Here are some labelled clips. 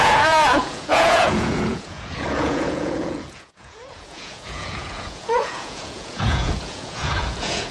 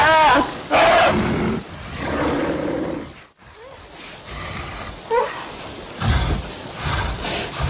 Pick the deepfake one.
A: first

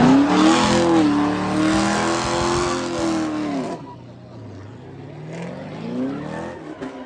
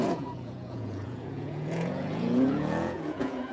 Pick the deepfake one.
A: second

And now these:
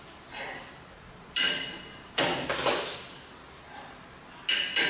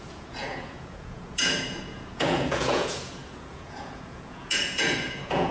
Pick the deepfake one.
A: second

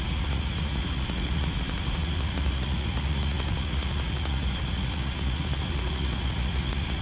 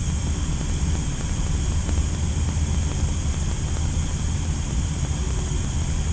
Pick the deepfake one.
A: first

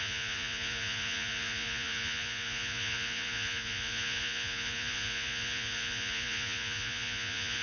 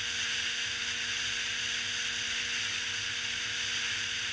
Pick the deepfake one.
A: first